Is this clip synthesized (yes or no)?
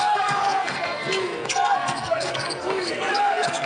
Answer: yes